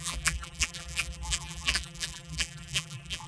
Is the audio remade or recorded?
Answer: remade